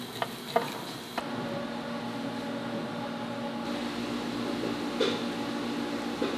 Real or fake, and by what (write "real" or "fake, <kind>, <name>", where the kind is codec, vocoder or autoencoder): real